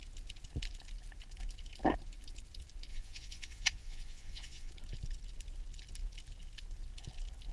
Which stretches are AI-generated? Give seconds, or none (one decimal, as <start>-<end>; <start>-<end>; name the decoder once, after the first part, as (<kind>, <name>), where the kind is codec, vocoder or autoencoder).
2.9-4.7 (vocoder, Vocos)